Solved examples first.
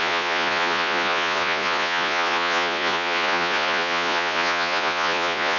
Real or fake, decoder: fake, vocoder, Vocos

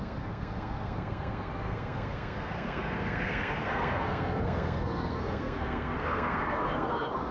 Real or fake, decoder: fake, codec, SNAC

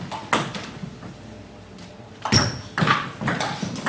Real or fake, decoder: real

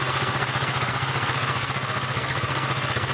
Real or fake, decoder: fake, codec, SNAC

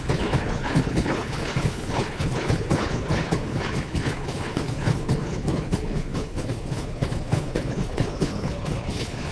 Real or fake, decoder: fake, codec, HILCodec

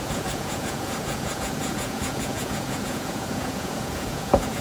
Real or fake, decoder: fake, vocoder, Vocos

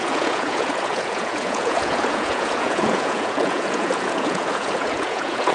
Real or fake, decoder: fake, vocoder, Vocos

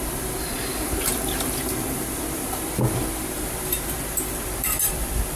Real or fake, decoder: fake, vocoder, BigVGAN v2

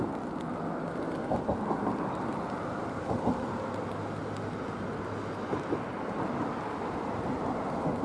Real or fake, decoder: real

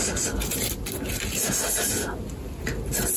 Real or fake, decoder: fake, vocoder, BigVGAN v2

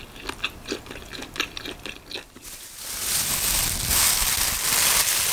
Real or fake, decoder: real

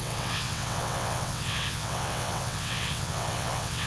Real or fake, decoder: fake, vocoder, WaveNeXt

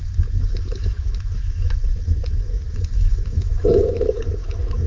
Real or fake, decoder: fake, autoencoder, DAC-VAE